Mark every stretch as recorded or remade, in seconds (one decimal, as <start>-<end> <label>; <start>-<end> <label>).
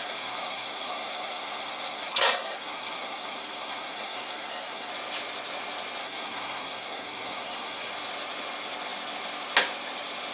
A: 0.0-4.9 remade; 4.9-6.0 recorded; 6.0-7.9 remade; 7.9-10.3 recorded